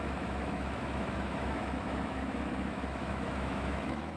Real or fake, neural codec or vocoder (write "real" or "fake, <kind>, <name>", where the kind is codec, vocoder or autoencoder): fake, autoencoder, DAC-VAE